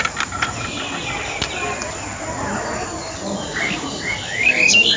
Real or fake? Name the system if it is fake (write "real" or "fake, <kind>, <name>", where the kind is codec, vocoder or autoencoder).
real